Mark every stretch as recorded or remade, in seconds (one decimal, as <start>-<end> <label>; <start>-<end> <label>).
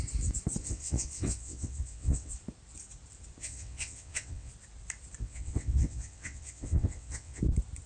0.0-0.6 recorded; 0.6-2.3 remade; 2.3-3.4 recorded; 3.4-4.5 remade; 4.5-5.2 recorded; 5.2-7.4 remade; 7.4-7.9 recorded